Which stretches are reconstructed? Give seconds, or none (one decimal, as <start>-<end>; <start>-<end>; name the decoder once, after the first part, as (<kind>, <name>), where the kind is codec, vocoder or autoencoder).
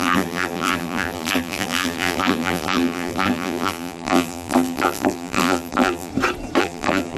0.0-6.1 (vocoder, BigVGAN v2); 6.6-7.2